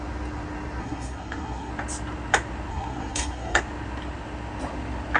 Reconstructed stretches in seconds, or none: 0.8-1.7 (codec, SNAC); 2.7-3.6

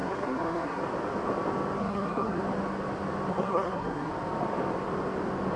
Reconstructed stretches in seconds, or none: 0.0-0.8 (codec, SNAC); 1.8-2.4; 3.3-4.1

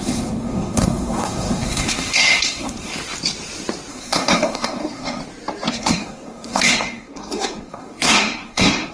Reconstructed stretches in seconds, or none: 0.0-2.9 (codec, SNAC); 3.9-5.2; 5.7-8.9